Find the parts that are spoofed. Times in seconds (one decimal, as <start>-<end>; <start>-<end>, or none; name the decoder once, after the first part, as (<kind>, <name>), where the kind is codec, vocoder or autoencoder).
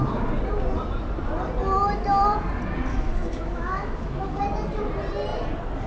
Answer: 2.9-4.4 (autoencoder, DAC-VAE)